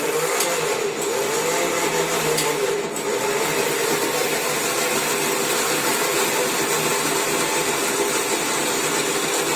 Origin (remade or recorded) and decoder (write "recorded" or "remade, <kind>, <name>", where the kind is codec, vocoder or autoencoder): recorded